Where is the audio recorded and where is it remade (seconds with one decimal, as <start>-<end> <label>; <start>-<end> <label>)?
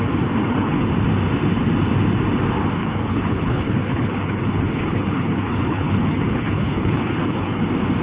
0.0-0.4 recorded; 0.4-0.9 remade; 0.9-2.8 recorded; 2.8-7.6 remade; 7.6-8.0 recorded